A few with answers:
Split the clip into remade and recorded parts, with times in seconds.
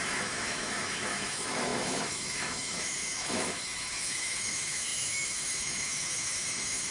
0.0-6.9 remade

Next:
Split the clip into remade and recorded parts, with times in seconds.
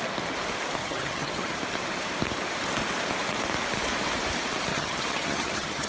0.0-0.8 recorded; 0.8-1.5 remade; 1.5-4.7 recorded; 4.7-5.9 remade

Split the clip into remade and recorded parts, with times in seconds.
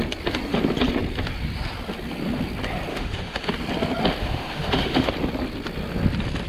0.0-2.9 recorded; 2.9-3.5 remade; 3.5-4.2 recorded; 4.2-5.1 remade; 5.1-6.5 recorded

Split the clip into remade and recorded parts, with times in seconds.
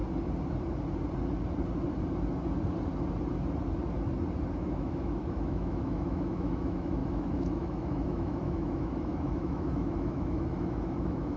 0.0-4.5 recorded; 4.5-11.4 remade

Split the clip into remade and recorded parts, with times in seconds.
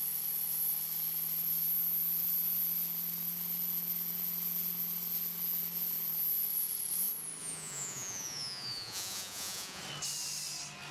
0.0-7.4 recorded; 7.4-9.8 remade; 9.8-10.9 recorded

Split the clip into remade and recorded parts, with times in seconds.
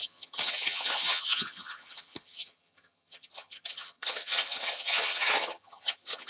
0.0-6.3 remade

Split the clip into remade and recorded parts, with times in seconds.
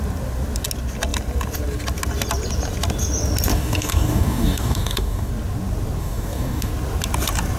0.0-3.5 recorded; 3.5-5.3 remade; 5.3-6.0 recorded; 6.0-6.7 remade; 6.7-7.6 recorded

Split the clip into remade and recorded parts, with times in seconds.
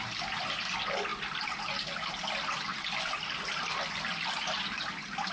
0.0-5.3 recorded